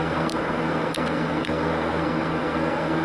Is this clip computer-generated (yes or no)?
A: yes